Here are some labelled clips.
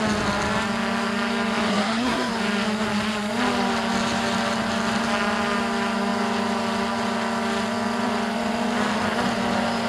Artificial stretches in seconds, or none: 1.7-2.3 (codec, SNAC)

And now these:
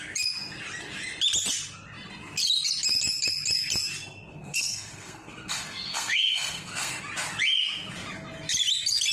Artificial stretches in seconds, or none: 4.3-7.0 (codec, SNAC)

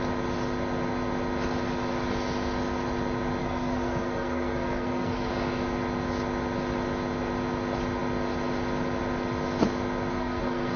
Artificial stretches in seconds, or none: 3.4-5.3 (codec, SNAC); 10.1-10.8

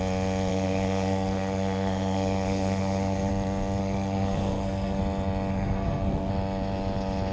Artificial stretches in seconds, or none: 0.5-3.3 (codec, SNAC); 3.8-5.0; 5.5-6.3

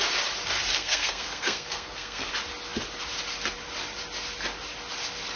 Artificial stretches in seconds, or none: 0.8-2.3 (codec, SNAC)

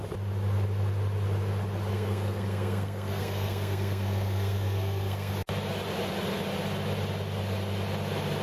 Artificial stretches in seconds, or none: 1.9-5.3 (codec, SNAC)

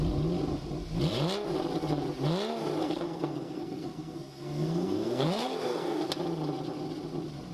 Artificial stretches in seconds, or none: 2.8-6.1 (codec, SNAC)

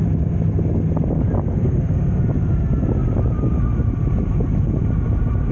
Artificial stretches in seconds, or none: 1.5-2.2 (codec, SNAC)